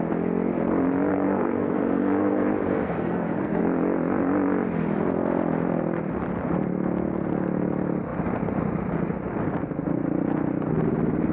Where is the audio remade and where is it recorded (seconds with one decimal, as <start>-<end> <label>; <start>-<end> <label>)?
0.0-1.1 recorded; 1.1-3.6 remade; 3.6-11.3 recorded